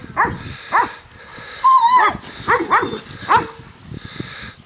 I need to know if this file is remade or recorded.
recorded